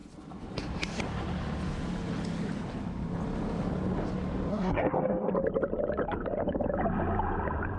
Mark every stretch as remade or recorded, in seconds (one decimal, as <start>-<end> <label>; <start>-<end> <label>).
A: 0.0-4.5 recorded; 4.5-5.3 remade; 5.3-7.8 recorded